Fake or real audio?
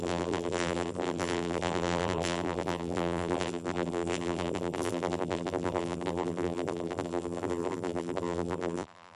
fake